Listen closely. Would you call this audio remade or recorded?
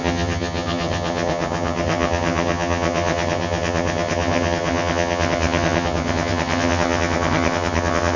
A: remade